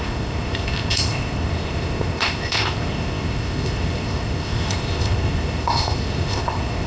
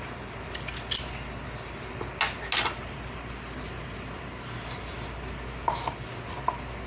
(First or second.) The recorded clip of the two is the second